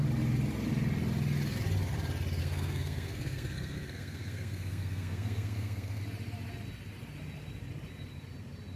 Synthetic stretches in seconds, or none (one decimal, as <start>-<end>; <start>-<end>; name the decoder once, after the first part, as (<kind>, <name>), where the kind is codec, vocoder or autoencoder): 2.4-6.0 (codec, SNAC)